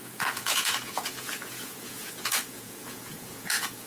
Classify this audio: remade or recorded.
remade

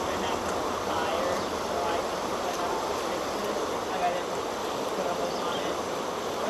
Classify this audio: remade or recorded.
recorded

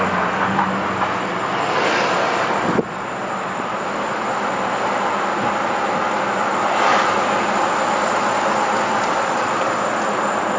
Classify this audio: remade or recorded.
recorded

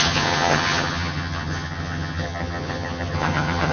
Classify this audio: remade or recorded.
remade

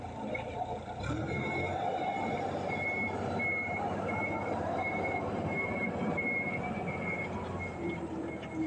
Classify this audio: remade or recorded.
remade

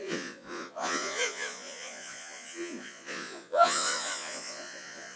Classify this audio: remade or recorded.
remade